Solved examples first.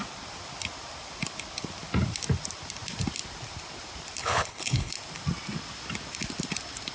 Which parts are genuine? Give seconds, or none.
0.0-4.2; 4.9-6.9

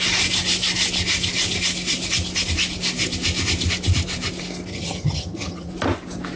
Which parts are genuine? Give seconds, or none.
0.0-4.7; 5.7-6.4

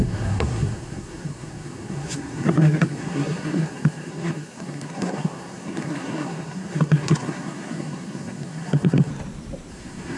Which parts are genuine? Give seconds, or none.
9.1-9.7

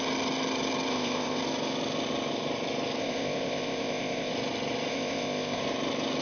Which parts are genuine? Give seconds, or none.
0.0-0.9; 1.4-3.0; 4.3-4.9; 5.6-6.2

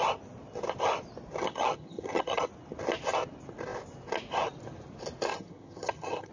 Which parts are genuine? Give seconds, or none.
0.0-1.4; 2.5-5.3